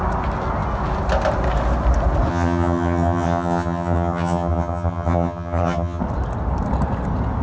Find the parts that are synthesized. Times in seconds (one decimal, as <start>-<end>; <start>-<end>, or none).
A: 2.3-6.0